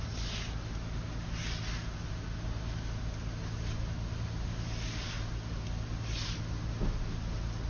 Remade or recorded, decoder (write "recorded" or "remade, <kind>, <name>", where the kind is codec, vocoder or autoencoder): recorded